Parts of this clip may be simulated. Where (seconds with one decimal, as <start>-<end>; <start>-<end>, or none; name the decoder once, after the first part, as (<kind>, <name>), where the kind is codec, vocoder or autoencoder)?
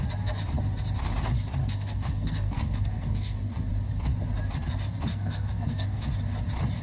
1.6-3.7 (codec, SNAC); 5.1-6.0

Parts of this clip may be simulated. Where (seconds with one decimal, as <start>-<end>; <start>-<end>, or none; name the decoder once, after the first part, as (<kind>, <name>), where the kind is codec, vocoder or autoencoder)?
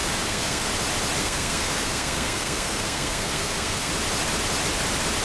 0.0-0.7 (codec, SNAC); 1.2-3.9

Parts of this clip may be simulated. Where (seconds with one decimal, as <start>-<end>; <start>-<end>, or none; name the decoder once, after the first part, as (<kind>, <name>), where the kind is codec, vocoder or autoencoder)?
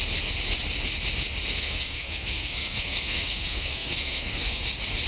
1.5-4.6 (codec, SNAC)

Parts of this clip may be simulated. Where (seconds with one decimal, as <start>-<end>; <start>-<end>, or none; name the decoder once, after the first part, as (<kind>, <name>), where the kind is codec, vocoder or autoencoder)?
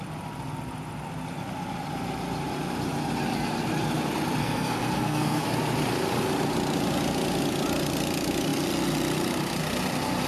4.4-5.4 (codec, SNAC)